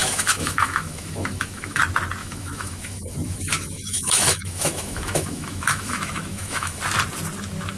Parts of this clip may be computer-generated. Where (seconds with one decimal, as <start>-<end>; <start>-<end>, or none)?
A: 0.0-1.8; 2.2-6.8